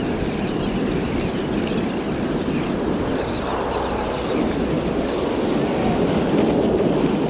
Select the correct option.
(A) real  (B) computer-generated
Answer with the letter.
A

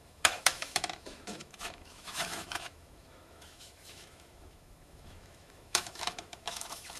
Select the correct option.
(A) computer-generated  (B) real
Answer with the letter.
A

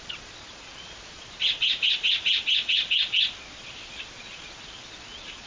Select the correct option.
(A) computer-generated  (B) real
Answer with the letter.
A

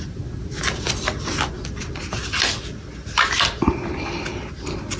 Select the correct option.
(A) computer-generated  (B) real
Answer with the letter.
B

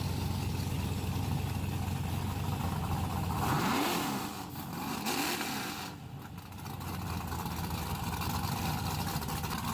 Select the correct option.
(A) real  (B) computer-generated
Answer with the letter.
A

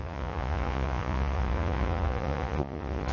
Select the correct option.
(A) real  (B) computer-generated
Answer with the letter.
B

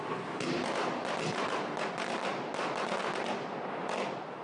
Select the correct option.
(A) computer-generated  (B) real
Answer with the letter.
B